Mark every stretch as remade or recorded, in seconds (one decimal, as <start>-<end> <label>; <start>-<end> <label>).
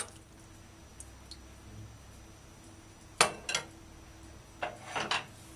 0.0-5.6 recorded